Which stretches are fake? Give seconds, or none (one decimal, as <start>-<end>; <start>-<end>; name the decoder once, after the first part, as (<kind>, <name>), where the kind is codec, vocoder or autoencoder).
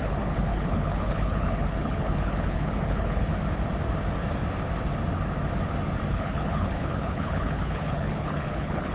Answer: 0.0-3.3 (codec, HILCodec); 6.1-8.9